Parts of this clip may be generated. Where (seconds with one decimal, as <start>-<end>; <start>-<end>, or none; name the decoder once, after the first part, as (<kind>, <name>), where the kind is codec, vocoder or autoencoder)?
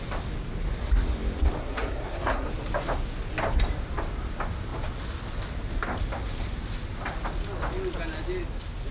1.6-2.5 (codec, SNAC)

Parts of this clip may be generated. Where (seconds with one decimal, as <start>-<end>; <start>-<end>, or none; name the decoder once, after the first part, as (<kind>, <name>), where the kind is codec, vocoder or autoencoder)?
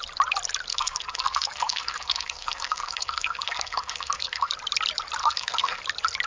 0.7-4.5 (codec, SNAC); 5.2-5.8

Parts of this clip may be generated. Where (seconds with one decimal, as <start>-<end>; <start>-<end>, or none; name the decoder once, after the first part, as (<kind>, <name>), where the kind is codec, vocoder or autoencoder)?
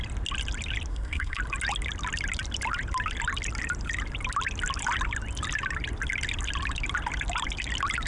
0.9-1.4 (codec, SNAC)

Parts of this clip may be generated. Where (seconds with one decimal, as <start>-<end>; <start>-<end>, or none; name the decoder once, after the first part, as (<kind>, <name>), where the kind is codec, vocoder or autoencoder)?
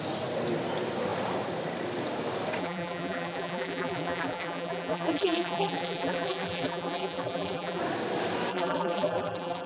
2.6-7.8 (vocoder, BigVGAN v2); 8.5-9.7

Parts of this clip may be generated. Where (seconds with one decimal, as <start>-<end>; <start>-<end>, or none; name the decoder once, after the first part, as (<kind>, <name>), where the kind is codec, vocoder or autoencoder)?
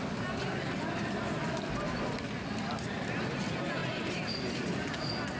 none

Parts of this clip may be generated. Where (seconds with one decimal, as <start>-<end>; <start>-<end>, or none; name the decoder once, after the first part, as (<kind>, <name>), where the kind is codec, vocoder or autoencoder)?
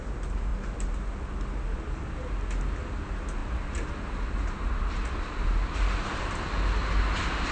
3.4-6.2 (vocoder, BigVGAN v2)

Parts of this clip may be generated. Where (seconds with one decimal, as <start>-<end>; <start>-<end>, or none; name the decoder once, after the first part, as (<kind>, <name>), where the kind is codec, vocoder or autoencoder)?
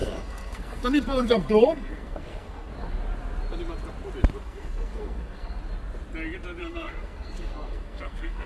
0.0-2.7 (codec, SNAC); 4.4-5.6; 6.6-8.5